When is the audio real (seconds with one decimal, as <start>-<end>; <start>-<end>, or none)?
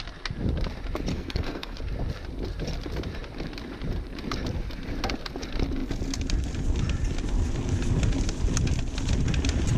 0.0-1.1; 1.8-9.8